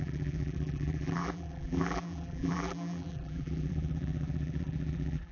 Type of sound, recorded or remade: remade